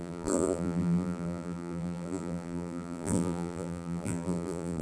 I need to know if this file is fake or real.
fake